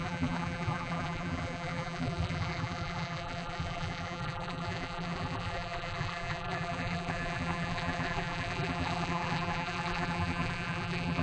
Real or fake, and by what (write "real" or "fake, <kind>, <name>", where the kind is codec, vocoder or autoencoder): fake, vocoder, BigVGAN v2